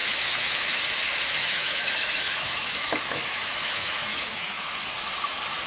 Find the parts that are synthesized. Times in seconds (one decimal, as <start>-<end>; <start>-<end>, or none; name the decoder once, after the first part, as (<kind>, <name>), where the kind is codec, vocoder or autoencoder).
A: 0.0-0.8 (autoencoder, DAC-VAE); 1.4-4.8